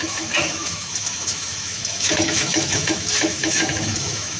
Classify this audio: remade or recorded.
remade